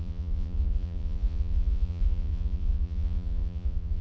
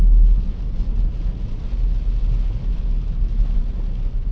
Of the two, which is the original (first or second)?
second